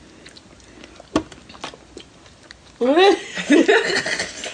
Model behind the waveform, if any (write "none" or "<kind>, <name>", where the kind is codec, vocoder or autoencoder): none